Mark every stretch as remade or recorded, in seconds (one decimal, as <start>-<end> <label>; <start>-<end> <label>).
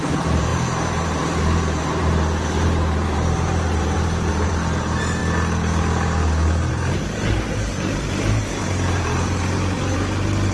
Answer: 0.0-5.2 remade; 5.2-6.7 recorded; 6.7-10.5 remade